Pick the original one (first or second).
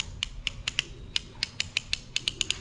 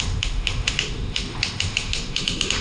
first